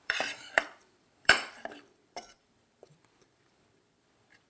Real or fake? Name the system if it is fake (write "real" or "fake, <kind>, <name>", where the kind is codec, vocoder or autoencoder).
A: fake, vocoder, BigVGAN v2